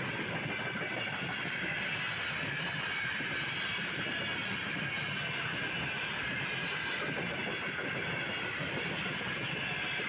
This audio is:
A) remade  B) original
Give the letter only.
B